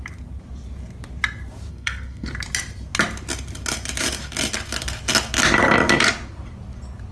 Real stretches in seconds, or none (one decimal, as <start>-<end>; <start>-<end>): 0.0-1.7; 2.3-7.1